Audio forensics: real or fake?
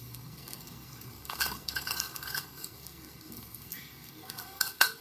fake